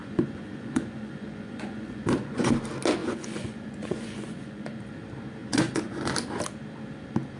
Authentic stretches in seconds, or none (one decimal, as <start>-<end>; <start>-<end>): 2.5-3.0; 4.8-5.4; 6.1-7.4